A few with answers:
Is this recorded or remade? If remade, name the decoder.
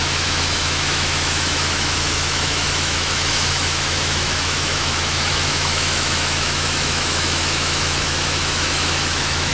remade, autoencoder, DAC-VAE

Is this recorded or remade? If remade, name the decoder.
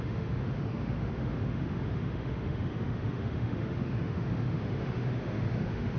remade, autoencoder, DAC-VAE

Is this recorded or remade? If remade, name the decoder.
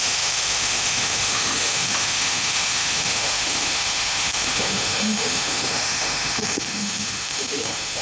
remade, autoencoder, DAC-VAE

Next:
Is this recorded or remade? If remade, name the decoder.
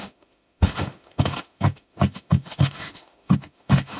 remade, autoencoder, DAC-VAE